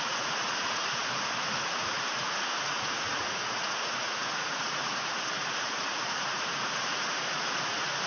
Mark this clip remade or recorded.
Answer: remade